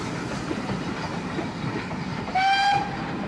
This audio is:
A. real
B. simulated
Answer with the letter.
B